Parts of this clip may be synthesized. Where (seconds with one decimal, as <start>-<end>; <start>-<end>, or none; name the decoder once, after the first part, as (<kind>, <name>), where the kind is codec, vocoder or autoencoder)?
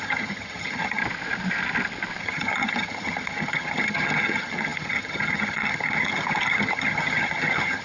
0.0-1.0 (vocoder, HiFi-GAN); 2.2-7.8